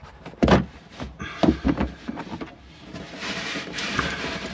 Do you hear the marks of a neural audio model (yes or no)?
yes